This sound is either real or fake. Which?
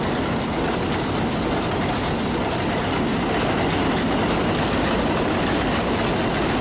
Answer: real